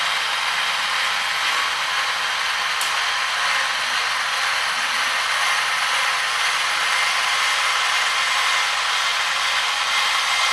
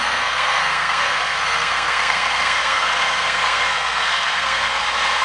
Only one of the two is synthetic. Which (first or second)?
second